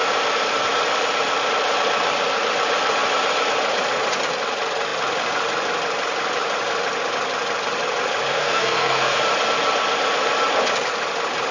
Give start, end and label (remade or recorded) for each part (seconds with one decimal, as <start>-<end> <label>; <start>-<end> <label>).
0.0-8.3 recorded; 8.3-9.2 remade; 9.2-11.5 recorded